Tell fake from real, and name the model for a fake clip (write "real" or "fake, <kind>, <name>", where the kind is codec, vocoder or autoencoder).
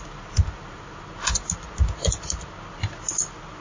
real